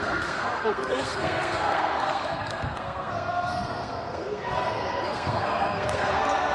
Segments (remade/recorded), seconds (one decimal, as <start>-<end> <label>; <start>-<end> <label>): 0.0-6.5 remade